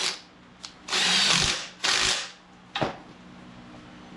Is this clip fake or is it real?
real